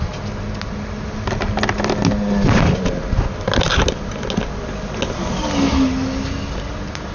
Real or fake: real